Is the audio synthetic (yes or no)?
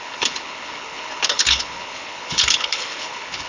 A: yes